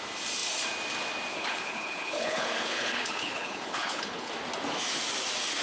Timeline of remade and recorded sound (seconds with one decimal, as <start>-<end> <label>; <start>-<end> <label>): 0.0-1.3 recorded; 1.3-4.3 remade; 4.3-5.6 recorded